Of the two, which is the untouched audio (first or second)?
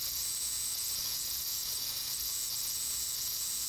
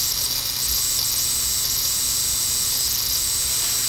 second